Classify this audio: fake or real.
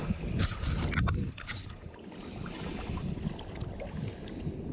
real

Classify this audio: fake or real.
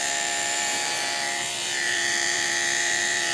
fake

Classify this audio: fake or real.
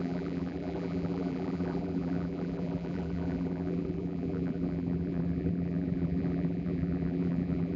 fake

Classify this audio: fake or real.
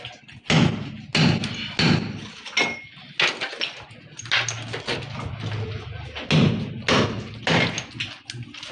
real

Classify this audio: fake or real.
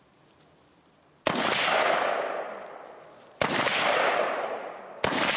real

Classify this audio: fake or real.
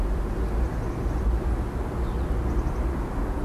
real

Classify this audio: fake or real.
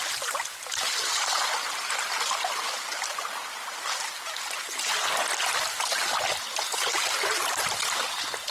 real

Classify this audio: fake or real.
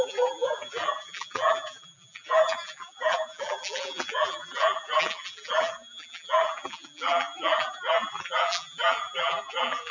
fake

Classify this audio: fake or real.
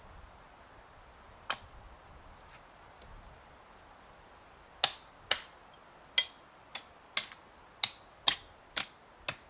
real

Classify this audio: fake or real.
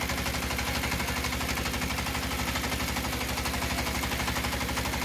real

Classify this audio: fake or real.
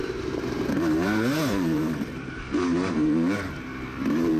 fake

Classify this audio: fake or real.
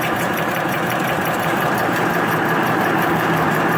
fake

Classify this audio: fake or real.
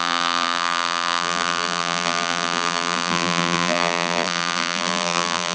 fake